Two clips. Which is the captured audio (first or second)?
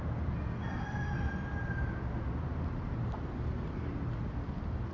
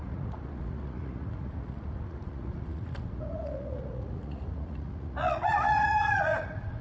first